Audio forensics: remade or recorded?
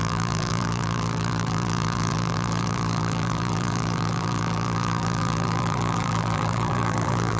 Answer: remade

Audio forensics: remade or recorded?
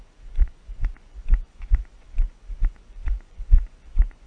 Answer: remade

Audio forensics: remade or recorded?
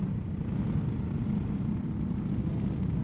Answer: recorded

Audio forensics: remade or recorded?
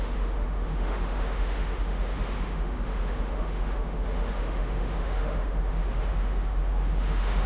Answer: remade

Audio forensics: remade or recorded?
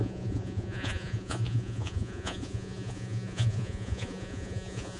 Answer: remade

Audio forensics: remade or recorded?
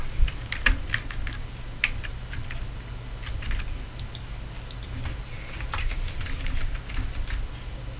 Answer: recorded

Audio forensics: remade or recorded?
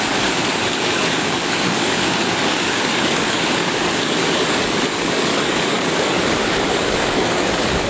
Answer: remade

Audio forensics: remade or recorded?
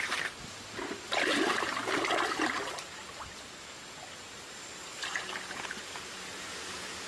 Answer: recorded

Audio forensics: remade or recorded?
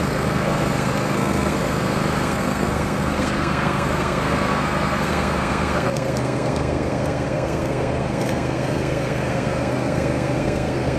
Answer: remade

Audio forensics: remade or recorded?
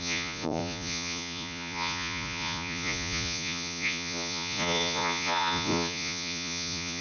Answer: remade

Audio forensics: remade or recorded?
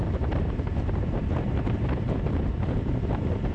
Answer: remade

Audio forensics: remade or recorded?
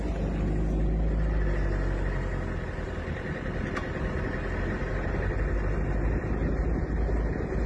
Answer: recorded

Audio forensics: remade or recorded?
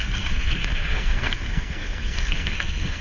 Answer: remade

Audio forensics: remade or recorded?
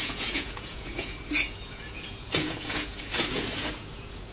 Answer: remade